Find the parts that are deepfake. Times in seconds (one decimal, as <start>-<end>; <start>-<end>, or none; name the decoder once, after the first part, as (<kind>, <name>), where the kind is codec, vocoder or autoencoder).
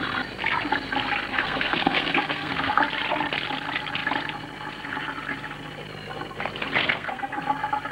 1.3-2.8 (codec, SNAC); 6.8-7.4